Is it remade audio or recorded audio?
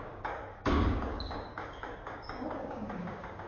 remade